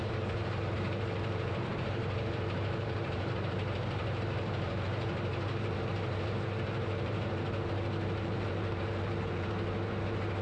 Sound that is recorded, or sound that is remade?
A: remade